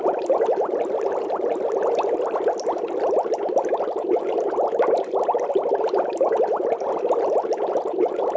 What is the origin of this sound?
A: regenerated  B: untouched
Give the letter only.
A